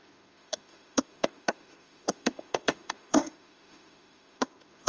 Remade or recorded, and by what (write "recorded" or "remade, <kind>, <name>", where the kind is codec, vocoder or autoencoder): remade, autoencoder, DAC-VAE